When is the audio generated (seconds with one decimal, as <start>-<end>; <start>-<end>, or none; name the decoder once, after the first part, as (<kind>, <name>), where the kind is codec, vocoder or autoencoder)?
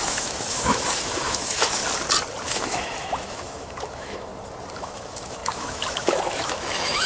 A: 0.0-1.8 (autoencoder, DAC-VAE); 2.5-4.3; 4.8-7.1